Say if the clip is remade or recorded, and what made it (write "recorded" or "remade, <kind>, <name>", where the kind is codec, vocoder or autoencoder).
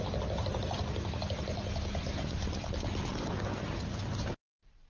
recorded